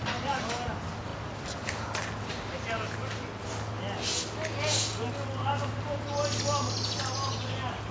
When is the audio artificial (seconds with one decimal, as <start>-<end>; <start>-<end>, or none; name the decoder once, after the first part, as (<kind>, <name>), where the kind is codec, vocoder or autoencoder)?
none